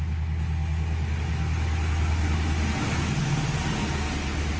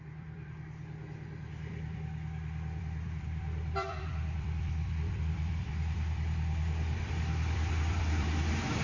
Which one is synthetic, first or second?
second